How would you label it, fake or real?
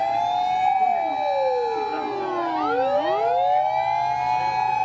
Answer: real